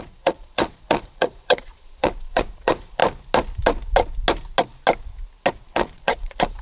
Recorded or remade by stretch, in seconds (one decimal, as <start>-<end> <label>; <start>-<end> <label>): 0.0-3.0 remade; 3.0-5.5 recorded; 5.5-6.6 remade